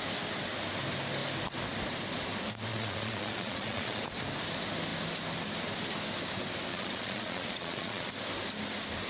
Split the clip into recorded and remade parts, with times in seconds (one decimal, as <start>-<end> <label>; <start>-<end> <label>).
0.0-2.7 recorded; 2.7-4.0 remade; 4.0-6.7 recorded; 6.7-8.1 remade; 8.1-9.1 recorded